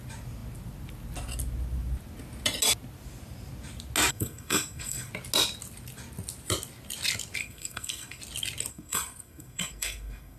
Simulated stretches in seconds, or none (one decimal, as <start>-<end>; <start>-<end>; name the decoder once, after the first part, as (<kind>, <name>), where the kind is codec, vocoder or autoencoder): 4.1-5.1 (codec, SNAC); 7.4-8.2; 8.7-10.4